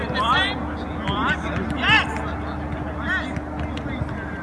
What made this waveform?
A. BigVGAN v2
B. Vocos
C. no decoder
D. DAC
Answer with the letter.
C